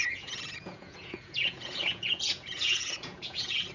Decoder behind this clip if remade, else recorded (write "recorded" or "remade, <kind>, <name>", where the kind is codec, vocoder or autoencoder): remade, vocoder, Vocos